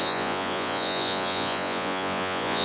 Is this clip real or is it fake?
fake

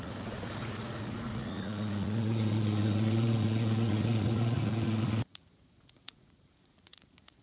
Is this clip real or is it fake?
fake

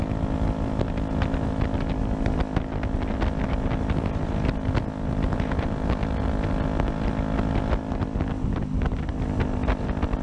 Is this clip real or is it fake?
real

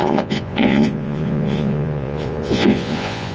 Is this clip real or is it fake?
fake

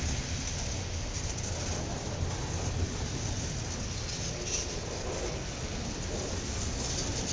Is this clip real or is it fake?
real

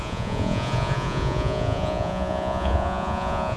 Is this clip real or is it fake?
fake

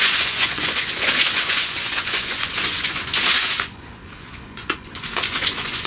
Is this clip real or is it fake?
fake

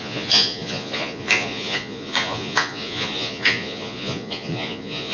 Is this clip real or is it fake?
fake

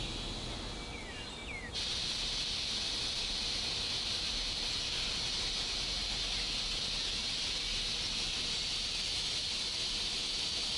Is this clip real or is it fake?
real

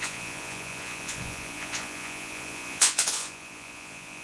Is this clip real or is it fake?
fake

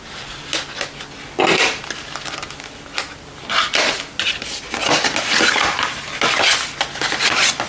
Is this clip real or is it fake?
real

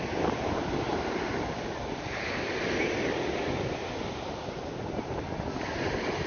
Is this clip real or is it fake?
real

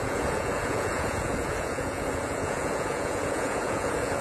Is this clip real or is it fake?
fake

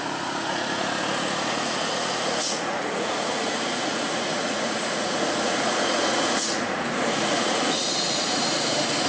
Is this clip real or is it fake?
fake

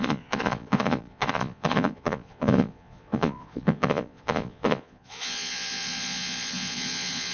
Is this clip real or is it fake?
fake